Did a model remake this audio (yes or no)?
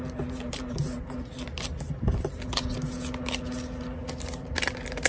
no